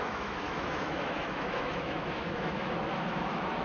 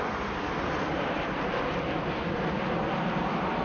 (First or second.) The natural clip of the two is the second